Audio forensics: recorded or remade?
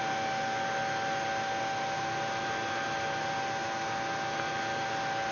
recorded